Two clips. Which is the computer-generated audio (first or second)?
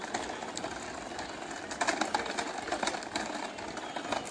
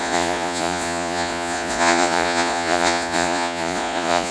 second